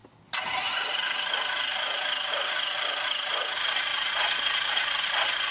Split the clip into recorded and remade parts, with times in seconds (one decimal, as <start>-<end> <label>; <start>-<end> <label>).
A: 0.0-5.5 recorded